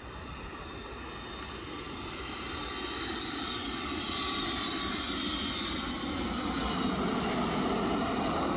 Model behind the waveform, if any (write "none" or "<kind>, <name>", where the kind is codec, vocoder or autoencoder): none